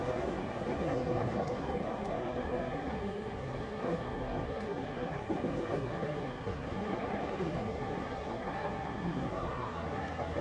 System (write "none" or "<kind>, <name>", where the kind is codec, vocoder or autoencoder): codec, SNAC